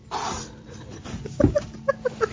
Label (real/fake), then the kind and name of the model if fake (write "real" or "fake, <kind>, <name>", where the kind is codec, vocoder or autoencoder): fake, vocoder, BigVGAN v2